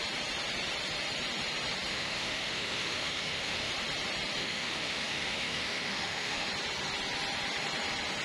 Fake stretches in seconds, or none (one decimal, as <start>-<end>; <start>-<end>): 1.9-3.7; 4.4-6.5

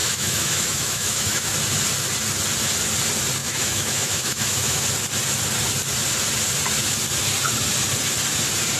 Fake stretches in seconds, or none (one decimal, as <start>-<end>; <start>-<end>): 0.0-1.5; 3.4-4.8